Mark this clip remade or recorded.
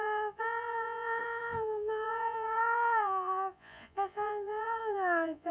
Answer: remade